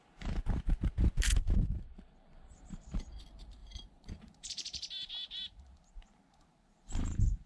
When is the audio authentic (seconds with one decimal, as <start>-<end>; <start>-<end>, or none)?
none